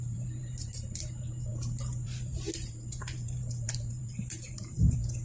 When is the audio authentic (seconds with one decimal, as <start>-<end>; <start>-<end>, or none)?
none